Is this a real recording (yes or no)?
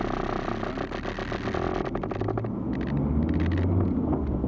yes